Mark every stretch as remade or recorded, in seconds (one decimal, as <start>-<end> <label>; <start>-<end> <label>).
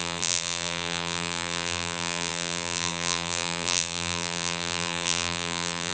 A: 0.0-5.9 remade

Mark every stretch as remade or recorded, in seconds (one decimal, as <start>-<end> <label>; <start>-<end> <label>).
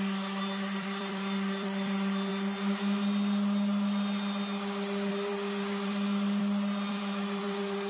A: 0.0-2.3 remade; 2.3-5.1 recorded; 5.1-6.4 remade; 6.4-6.9 recorded; 6.9-7.9 remade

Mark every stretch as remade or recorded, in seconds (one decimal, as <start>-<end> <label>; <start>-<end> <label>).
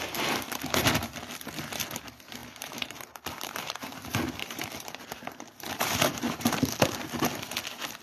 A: 0.0-2.4 recorded; 2.4-7.2 remade; 7.2-8.0 recorded